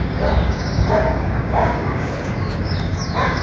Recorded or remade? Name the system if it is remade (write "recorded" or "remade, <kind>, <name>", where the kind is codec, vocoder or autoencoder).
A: remade, codec, DAC